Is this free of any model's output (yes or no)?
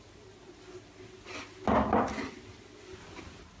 yes